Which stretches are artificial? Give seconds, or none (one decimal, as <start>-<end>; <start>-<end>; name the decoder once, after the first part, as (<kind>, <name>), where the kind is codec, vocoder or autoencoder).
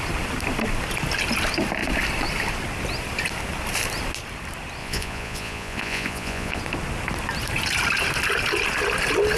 4.8-6.6 (vocoder, Vocos)